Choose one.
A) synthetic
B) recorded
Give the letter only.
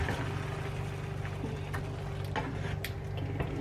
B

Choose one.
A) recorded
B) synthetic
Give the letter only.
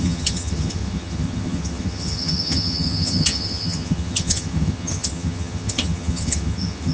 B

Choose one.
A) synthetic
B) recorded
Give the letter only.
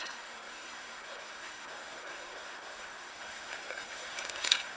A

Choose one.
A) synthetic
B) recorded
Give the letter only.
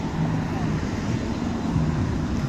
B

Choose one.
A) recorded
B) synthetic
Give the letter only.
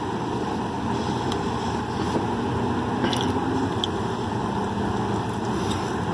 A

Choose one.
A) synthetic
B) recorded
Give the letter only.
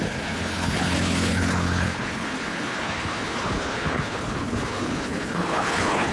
A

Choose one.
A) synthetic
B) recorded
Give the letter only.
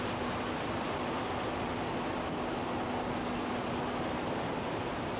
B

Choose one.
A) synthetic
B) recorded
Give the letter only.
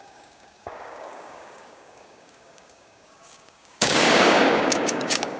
A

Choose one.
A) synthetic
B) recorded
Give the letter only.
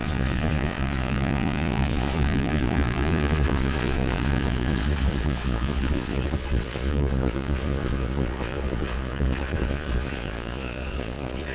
A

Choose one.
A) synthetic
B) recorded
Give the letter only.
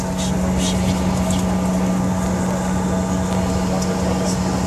B